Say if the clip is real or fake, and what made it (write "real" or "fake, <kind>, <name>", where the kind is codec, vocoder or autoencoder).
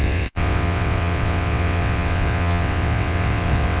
fake, vocoder, WaveNeXt